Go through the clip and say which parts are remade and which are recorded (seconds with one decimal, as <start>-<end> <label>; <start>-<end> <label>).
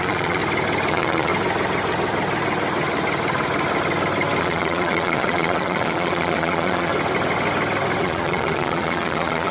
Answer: 0.0-0.4 remade; 0.4-0.9 recorded; 0.9-1.3 remade; 1.3-4.4 recorded; 4.4-6.9 remade; 6.9-8.0 recorded; 8.0-9.5 remade